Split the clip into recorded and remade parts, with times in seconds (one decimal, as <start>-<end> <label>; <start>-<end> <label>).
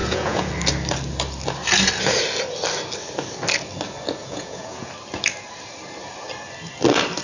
0.0-0.5 remade; 0.5-4.2 recorded; 4.2-4.9 remade; 4.9-7.2 recorded